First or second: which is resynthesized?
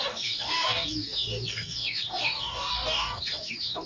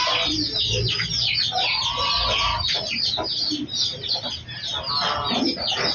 first